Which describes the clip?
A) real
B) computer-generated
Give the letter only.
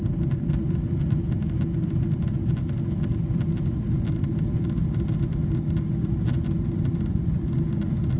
A